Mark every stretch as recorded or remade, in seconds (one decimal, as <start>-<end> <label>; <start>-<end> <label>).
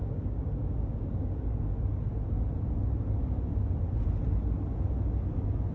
0.0-2.1 remade; 2.1-5.7 recorded